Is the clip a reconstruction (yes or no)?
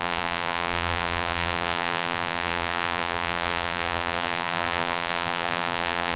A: yes